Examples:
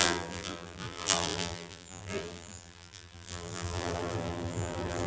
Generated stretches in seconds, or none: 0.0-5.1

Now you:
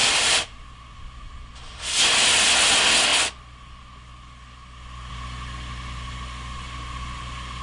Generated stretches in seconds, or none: 0.0-1.0

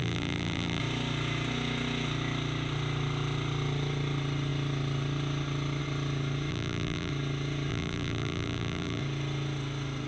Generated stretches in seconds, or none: 0.0-0.8; 6.5-7.1; 7.7-9.0

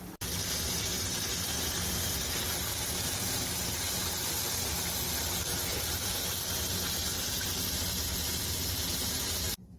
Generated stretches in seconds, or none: 2.7-5.1; 5.7-6.3; 7.0-9.8

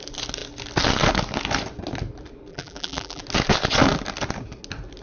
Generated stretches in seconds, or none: 2.5-3.2